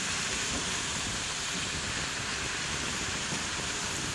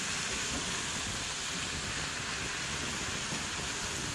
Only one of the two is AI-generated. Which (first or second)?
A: first